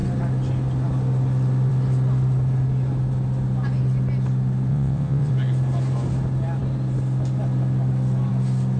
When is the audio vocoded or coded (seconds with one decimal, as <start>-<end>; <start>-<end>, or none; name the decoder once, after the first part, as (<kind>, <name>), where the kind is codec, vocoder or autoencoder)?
4.7-5.3 (vocoder, WaveNeXt)